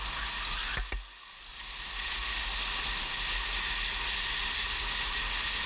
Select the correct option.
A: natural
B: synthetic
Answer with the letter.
A